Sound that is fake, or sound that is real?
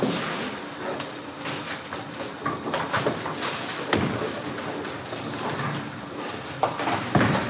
real